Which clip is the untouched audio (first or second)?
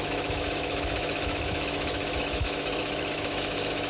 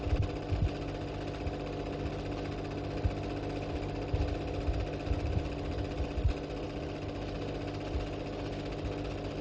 second